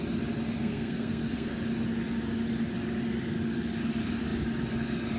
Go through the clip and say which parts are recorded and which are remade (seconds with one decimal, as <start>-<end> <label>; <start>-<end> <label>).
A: 0.0-0.6 recorded; 0.6-1.5 remade; 1.5-5.2 recorded